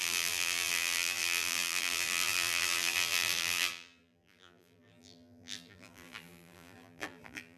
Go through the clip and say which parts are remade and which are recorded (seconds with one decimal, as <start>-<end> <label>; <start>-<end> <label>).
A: 0.0-7.6 remade